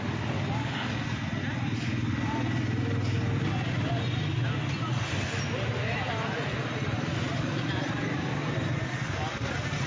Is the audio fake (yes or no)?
no